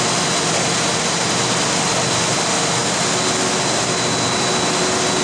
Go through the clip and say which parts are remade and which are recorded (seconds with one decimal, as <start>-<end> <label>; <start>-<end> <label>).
0.0-5.2 recorded